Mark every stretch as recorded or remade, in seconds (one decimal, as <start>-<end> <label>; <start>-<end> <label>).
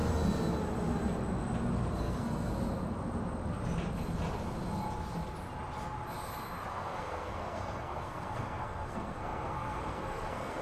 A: 0.0-2.0 recorded; 2.0-2.5 remade; 2.5-6.7 recorded; 6.7-10.6 remade